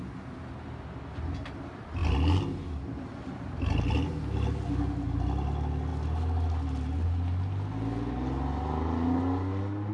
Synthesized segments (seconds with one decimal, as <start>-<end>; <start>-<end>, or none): none

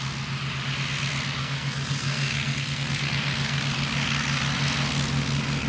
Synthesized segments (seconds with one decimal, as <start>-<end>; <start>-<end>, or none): 1.4-3.6

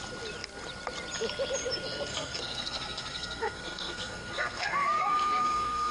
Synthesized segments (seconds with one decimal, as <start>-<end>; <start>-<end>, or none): 2.1-5.9

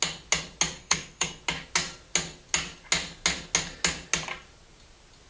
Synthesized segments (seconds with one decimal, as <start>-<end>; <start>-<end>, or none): 0.8-1.4

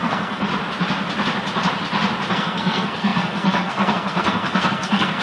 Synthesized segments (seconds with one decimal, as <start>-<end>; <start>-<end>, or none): 0.0-0.5; 2.3-5.2

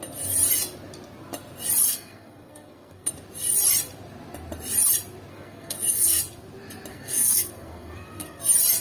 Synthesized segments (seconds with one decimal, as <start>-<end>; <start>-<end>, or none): 1.9-3.1; 5.3-6.2; 6.9-8.4

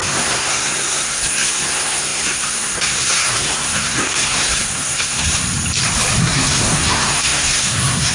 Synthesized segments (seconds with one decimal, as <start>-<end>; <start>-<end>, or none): 0.0-5.4; 6.2-8.1

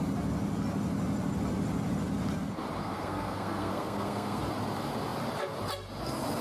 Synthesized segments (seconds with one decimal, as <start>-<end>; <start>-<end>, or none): 2.8-4.4